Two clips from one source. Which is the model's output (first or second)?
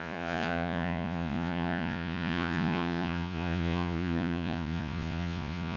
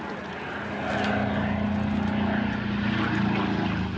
first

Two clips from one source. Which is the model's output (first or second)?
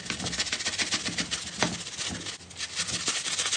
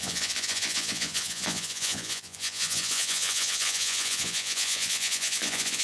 second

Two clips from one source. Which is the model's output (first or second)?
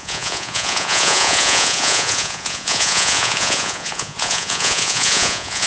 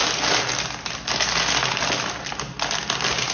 first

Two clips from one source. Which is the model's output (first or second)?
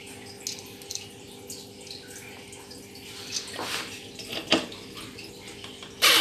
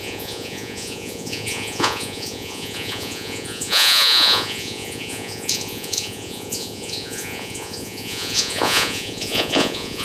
second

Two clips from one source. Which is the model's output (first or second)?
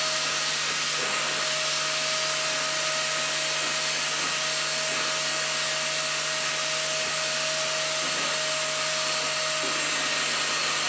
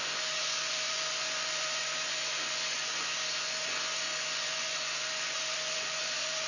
second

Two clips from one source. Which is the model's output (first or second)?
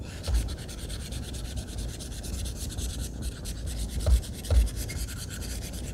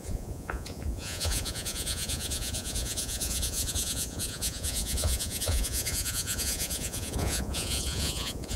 second